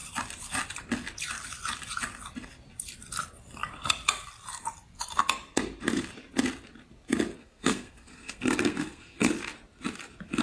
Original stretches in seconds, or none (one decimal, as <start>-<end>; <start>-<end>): 0.0-7.4; 9.3-10.4